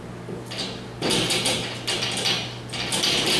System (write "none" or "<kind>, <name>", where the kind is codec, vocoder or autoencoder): none